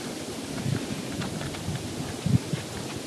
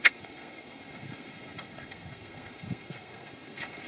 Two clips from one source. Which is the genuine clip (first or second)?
first